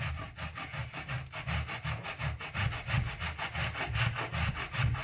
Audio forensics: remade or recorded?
recorded